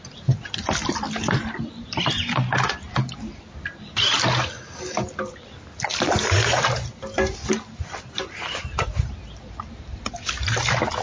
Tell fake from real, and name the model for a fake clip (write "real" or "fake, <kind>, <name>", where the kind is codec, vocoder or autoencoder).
fake, vocoder, BigVGAN v2